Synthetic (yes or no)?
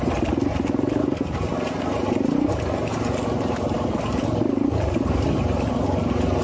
no